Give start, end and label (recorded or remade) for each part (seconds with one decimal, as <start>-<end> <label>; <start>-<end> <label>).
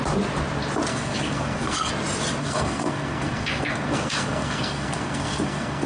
0.0-0.9 recorded; 0.9-1.9 remade; 1.9-2.4 recorded; 2.4-5.9 remade